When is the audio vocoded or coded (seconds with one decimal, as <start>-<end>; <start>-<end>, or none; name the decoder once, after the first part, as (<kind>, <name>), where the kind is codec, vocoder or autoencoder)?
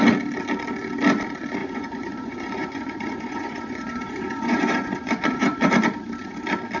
1.6-5.7 (vocoder, Vocos)